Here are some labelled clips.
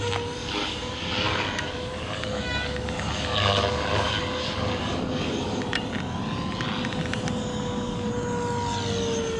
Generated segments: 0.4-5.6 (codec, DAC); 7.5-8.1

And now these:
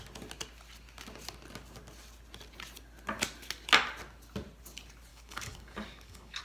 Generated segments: 5.1-6.4 (codec, DAC)

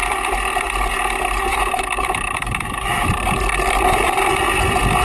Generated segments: 1.5-3.1 (autoencoder, DAC-VAE)

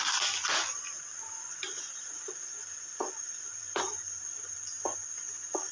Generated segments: none

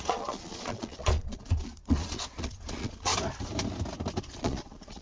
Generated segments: 0.0-3.1 (vocoder, Vocos); 4.2-5.0